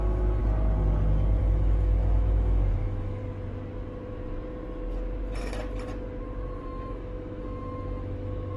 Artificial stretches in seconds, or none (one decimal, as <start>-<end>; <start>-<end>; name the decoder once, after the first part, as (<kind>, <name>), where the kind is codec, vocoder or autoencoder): 0.0-0.4 (autoencoder, DAC-VAE); 1.4-3.2; 6.6-8.6